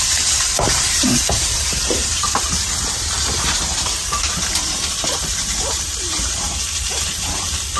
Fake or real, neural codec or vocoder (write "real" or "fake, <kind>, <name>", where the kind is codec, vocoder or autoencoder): fake, vocoder, BigVGAN v2